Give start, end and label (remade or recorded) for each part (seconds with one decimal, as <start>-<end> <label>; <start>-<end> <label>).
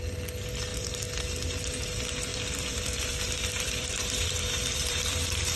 0.0-0.7 recorded; 0.7-1.7 remade; 1.7-2.3 recorded; 2.3-5.6 remade